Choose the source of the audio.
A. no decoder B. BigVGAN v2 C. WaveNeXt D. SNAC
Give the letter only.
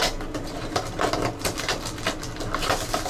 A